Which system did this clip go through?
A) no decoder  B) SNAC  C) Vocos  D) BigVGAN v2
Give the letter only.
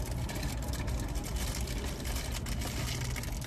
A